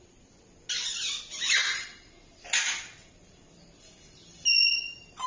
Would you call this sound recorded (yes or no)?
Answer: yes